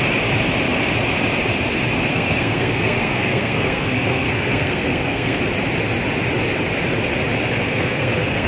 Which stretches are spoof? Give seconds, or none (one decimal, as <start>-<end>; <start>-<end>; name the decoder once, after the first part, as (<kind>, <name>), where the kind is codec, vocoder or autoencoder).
2.1-5.4 (codec, SNAC); 7.7-8.5